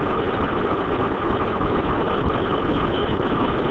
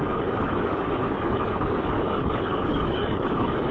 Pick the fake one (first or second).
second